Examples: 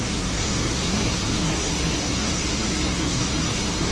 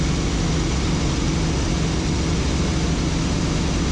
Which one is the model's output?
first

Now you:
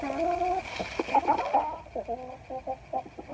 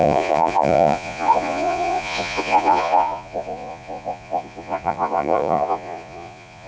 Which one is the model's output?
second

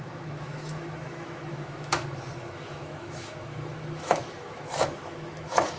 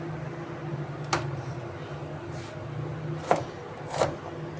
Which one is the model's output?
first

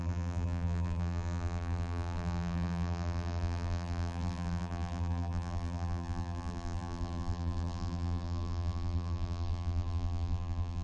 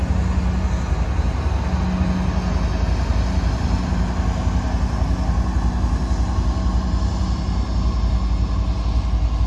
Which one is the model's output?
first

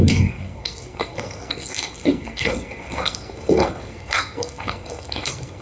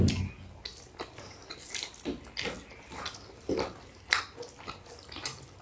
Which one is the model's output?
first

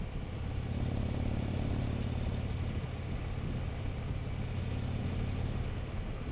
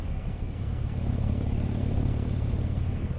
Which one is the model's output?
second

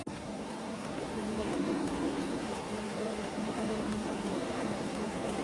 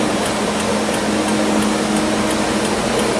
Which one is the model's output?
first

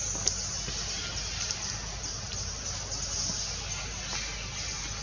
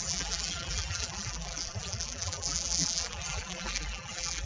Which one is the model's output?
second